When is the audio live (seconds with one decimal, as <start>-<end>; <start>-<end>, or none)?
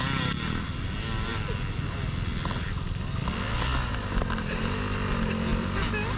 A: 0.0-6.2